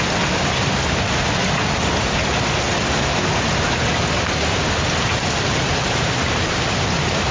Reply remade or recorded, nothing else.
recorded